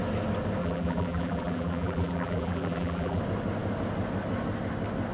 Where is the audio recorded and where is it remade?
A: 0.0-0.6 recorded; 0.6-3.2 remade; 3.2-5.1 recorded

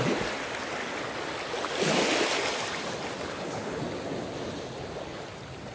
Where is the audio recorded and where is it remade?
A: 0.0-3.3 recorded; 3.3-3.8 remade; 3.8-5.7 recorded

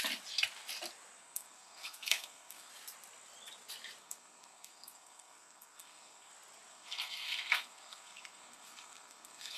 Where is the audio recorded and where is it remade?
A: 0.0-1.2 recorded; 1.2-2.7 remade; 2.7-4.0 recorded; 4.0-6.3 remade; 6.3-6.7 recorded; 6.7-9.6 remade

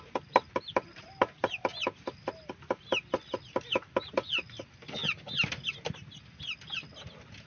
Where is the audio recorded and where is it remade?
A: 0.0-7.5 recorded

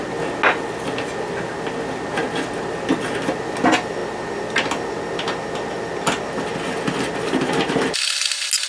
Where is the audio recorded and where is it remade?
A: 0.0-8.7 recorded

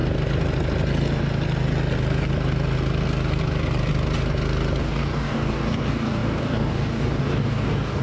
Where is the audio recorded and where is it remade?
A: 0.0-4.8 recorded; 4.8-8.0 remade